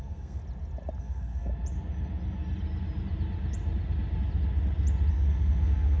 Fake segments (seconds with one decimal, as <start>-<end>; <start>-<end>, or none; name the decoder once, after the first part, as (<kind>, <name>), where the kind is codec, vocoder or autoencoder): 0.0-0.4 (codec, SNAC); 1.0-1.5; 5.1-6.0